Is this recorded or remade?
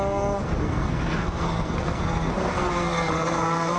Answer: remade